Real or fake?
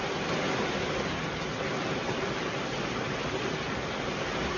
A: real